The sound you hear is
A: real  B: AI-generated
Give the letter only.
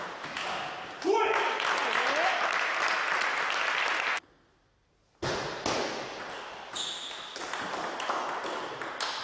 A